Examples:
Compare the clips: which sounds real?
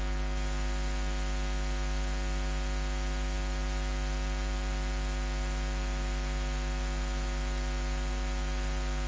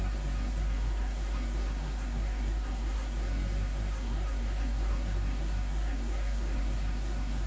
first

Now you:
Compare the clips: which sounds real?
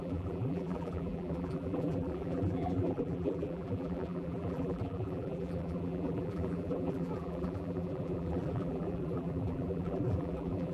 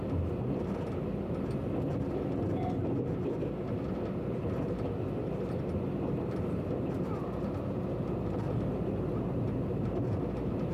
second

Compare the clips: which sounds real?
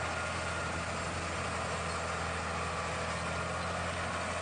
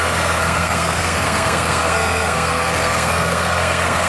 first